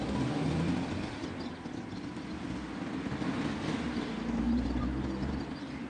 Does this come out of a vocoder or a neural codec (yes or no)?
no